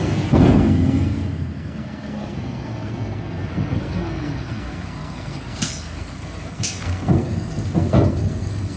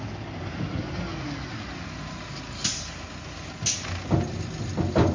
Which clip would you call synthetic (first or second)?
first